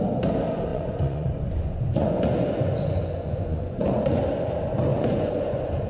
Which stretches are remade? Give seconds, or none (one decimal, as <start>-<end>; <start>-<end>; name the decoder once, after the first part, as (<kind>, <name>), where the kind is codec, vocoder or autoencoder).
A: 0.7-4.2 (vocoder, Vocos); 4.9-5.9